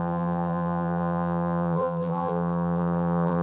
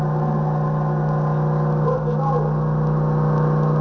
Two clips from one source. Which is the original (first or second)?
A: second